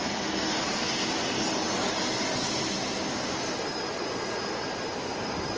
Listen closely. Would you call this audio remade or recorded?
recorded